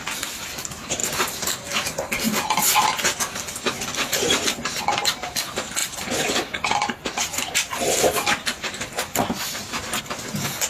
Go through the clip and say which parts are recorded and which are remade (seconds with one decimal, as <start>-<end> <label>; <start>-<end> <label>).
0.0-5.8 recorded; 5.8-10.0 remade; 10.0-10.7 recorded